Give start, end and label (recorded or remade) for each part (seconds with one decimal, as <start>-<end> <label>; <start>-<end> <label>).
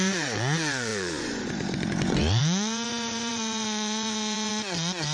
0.0-5.1 remade